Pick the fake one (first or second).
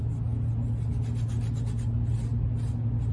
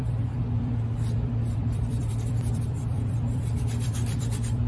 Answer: second